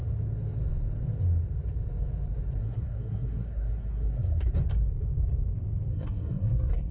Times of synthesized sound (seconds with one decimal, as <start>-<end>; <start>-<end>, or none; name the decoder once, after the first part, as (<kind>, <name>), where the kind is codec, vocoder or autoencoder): 2.6-4.5 (codec, SNAC); 5.9-6.9